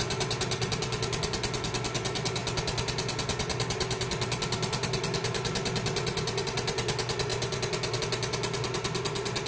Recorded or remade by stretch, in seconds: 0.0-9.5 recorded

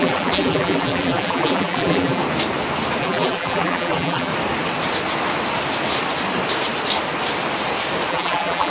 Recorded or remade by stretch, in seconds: 0.0-2.2 remade; 2.2-3.0 recorded; 3.0-4.3 remade; 4.3-8.1 recorded; 8.1-8.7 remade

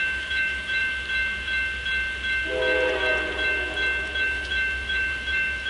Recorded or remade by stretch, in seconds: 0.0-0.8 remade; 0.8-4.2 recorded; 4.2-5.7 remade

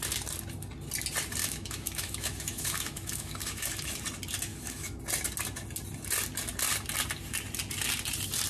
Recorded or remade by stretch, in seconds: 0.0-1.4 recorded; 1.4-4.0 remade; 4.0-4.5 recorded; 4.5-5.0 remade; 5.0-8.5 recorded